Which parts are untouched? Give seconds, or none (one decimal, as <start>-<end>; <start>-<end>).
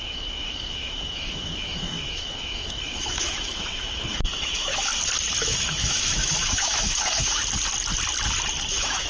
4.9-5.4; 7.4-8.7